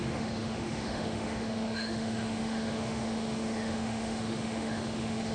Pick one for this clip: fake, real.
fake